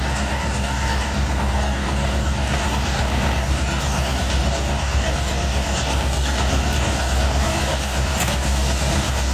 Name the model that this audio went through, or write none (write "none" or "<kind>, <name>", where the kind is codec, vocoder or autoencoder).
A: codec, DAC